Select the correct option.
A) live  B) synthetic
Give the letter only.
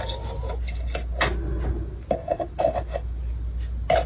A